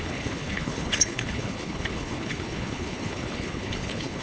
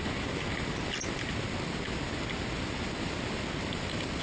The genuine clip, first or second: second